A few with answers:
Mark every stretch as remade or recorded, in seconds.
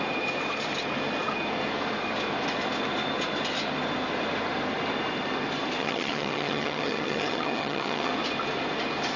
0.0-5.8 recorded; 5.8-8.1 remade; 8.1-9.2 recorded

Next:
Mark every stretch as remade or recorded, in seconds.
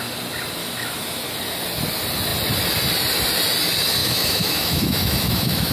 0.0-0.6 recorded; 0.6-1.2 remade; 1.2-4.0 recorded; 4.0-5.7 remade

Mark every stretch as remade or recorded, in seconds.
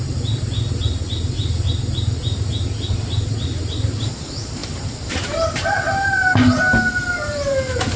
0.0-8.0 recorded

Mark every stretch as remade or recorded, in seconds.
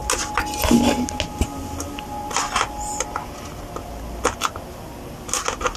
0.0-5.8 recorded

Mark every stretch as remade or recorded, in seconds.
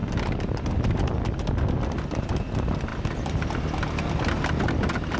0.0-5.2 recorded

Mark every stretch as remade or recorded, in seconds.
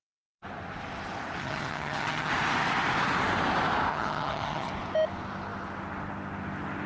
0.0-1.4 recorded; 1.4-2.3 remade; 2.3-3.9 recorded; 3.9-4.7 remade; 4.7-6.9 recorded